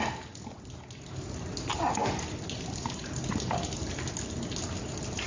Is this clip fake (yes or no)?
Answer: no